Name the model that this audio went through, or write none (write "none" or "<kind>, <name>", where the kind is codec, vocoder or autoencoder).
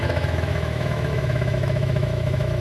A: autoencoder, DAC-VAE